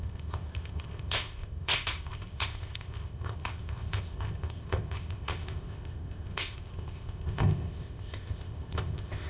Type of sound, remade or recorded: remade